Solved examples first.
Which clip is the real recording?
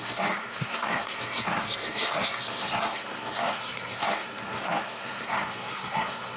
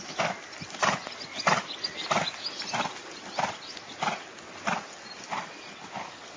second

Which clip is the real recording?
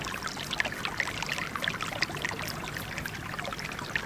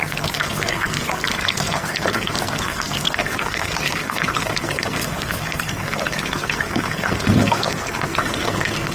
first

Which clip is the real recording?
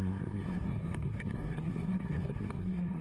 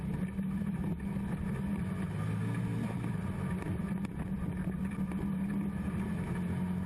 second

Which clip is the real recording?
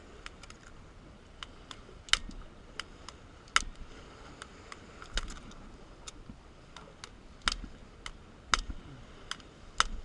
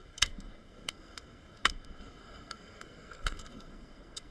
first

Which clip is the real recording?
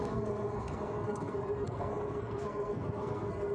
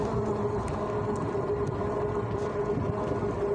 second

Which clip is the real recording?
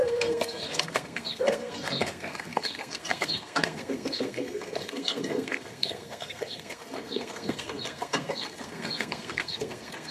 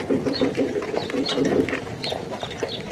second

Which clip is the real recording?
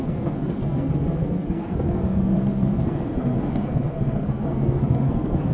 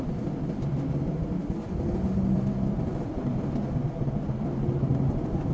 second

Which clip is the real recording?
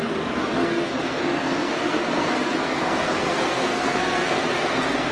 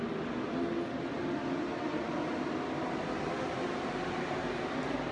second